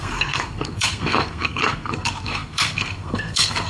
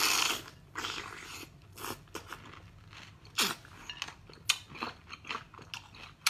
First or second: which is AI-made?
first